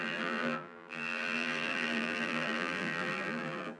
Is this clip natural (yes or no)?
no